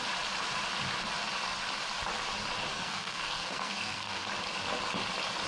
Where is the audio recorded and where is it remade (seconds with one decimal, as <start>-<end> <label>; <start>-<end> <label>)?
0.0-2.7 recorded; 2.7-4.3 remade; 4.3-5.5 recorded